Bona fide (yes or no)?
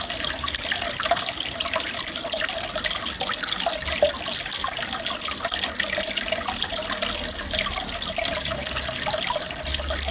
yes